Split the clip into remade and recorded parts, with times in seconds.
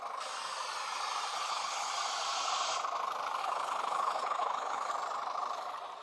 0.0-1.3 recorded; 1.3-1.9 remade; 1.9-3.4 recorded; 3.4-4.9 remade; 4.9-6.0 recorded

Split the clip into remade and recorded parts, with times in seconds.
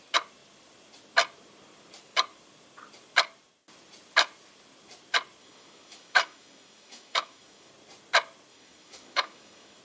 0.0-5.4 recorded; 5.4-7.7 remade; 7.7-8.5 recorded; 8.5-9.8 remade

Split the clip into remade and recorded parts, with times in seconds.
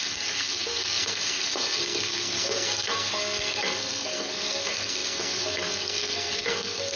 0.0-7.0 remade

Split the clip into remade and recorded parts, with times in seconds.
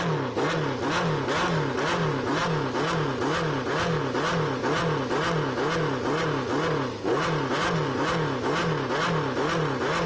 0.0-10.1 recorded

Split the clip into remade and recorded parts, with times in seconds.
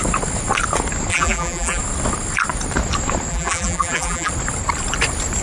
0.0-1.1 recorded; 1.1-1.8 remade; 1.8-3.3 recorded; 3.3-4.3 remade; 4.3-5.4 recorded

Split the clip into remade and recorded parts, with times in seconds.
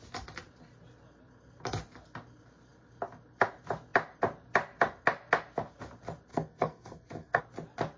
0.0-6.3 recorded; 6.3-7.4 remade; 7.4-8.0 recorded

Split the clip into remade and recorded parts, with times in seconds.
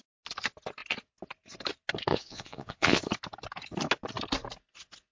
0.0-2.1 recorded; 2.1-3.0 remade; 3.0-5.1 recorded